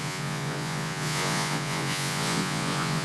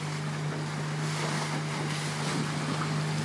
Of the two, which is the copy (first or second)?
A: first